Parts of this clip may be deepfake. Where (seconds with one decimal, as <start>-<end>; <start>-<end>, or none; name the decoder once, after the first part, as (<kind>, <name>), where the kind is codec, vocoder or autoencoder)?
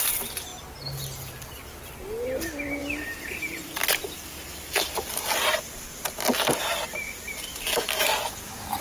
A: none